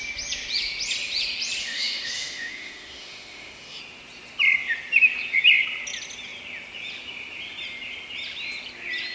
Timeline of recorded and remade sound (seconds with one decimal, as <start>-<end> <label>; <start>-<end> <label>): 0.0-1.6 recorded; 1.6-3.8 remade; 3.8-9.1 recorded